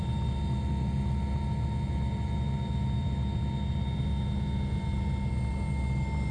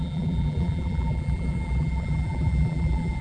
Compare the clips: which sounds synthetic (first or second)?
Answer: second